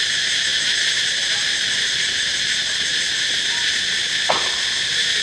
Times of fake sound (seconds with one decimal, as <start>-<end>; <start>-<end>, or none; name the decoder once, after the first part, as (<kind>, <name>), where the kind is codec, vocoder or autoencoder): none